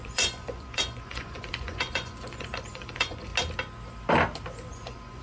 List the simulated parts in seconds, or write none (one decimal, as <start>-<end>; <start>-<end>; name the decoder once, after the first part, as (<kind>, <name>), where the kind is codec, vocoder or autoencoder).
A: 0.0-3.3 (vocoder, Vocos); 4.7-5.2